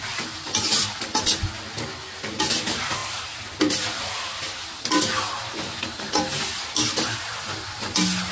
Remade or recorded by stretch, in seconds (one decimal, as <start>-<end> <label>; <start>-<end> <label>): 0.0-8.3 recorded